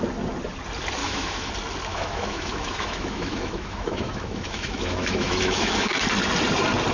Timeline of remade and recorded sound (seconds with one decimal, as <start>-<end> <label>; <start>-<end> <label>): 0.0-1.0 recorded; 1.0-1.5 remade; 1.5-1.9 recorded; 1.9-6.0 remade; 6.0-6.9 recorded